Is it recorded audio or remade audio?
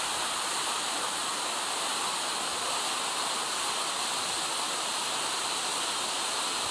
recorded